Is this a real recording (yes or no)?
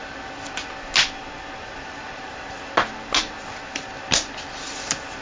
yes